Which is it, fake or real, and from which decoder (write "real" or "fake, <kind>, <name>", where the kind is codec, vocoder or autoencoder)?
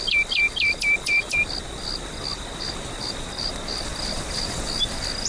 real